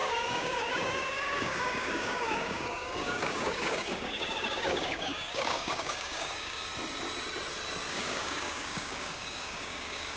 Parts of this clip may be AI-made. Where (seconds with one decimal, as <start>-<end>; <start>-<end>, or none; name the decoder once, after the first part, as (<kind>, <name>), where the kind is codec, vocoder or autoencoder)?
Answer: 0.0-6.7 (codec, DAC); 7.9-10.2